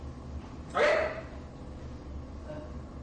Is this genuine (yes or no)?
yes